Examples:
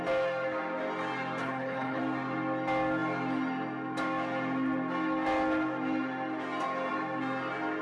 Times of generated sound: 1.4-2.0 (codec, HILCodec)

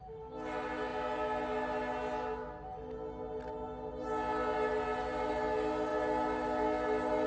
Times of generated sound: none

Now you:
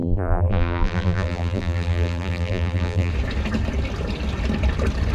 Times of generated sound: 0.0-3.1 (vocoder, BigVGAN v2)